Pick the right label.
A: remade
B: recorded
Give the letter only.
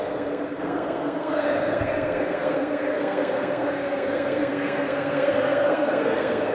A